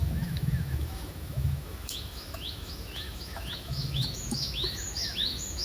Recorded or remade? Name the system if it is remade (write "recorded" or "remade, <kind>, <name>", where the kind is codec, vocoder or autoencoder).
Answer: remade, autoencoder, DAC-VAE